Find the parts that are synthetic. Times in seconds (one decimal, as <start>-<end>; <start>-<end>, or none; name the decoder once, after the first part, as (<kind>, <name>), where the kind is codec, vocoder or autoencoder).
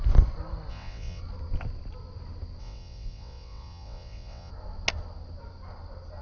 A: 0.7-1.2 (vocoder, WaveNeXt); 2.6-4.5